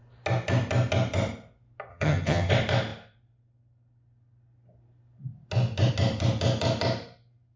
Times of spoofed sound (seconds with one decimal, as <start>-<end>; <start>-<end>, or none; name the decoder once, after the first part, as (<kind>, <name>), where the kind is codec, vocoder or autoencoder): 1.9-2.5 (vocoder, HiFi-GAN)